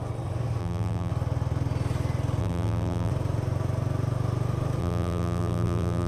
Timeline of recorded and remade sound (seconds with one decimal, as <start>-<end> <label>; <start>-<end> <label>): 0.0-0.6 recorded; 0.6-1.1 remade; 1.1-2.4 recorded; 2.4-3.1 remade; 3.1-4.8 recorded; 4.8-6.1 remade